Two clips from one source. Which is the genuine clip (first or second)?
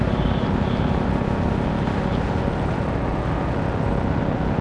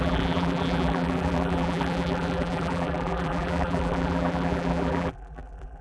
first